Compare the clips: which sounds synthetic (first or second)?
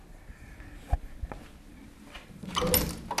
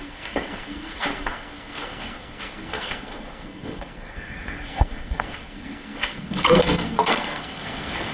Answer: second